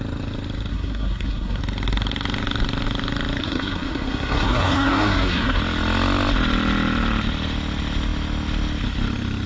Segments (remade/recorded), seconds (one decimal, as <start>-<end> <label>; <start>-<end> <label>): 0.0-0.7 recorded; 0.7-1.6 remade; 1.6-3.4 recorded; 3.4-5.6 remade; 5.6-9.5 recorded